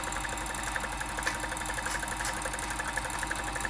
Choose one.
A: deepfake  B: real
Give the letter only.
B